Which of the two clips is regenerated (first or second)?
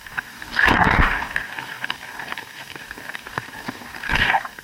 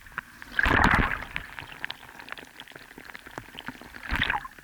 first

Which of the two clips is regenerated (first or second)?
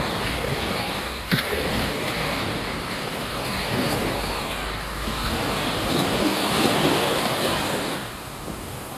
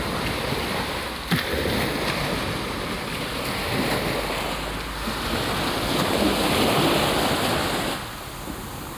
first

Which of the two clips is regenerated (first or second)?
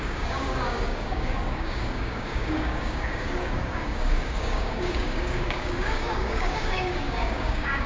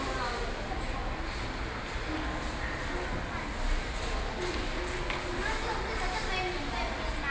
first